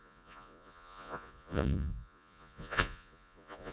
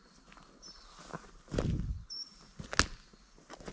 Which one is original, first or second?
second